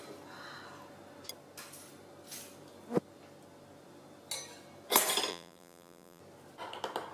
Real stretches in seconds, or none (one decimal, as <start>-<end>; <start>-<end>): 0.0-5.3; 6.2-7.1

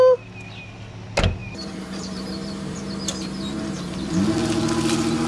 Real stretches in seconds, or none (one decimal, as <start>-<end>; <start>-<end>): 0.0-1.4; 2.8-5.3

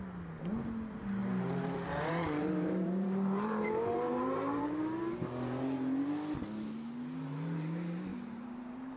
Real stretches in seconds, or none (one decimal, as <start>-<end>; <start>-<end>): 0.0-1.2; 5.0-8.1

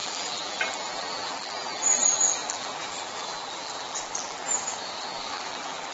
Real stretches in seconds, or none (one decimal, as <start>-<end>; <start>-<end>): 4.5-5.0

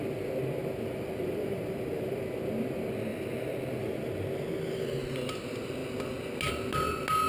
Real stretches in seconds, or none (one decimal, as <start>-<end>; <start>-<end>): 0.0-0.6; 2.2-3.1; 3.8-7.3

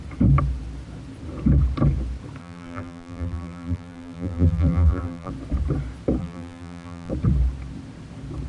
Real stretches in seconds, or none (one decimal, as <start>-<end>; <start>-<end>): 0.0-2.4; 5.3-6.2; 7.1-8.5

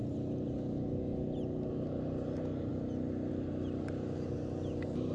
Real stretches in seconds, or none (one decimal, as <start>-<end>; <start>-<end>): 0.0-1.7; 2.7-3.3

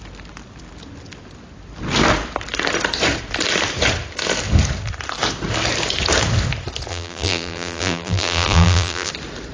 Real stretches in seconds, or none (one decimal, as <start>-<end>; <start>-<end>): 0.0-6.9; 9.1-9.5